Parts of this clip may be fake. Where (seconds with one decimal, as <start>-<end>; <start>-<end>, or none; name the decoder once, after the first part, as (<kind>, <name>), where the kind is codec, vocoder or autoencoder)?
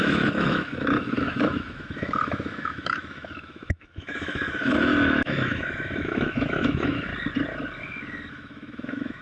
0.0-7.1 (autoencoder, DAC-VAE); 8.3-9.2